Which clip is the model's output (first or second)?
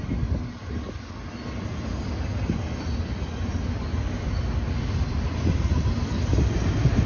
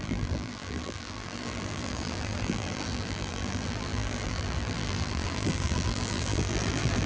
second